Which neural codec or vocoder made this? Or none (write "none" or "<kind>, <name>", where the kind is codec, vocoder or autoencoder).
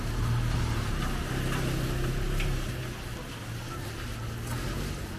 none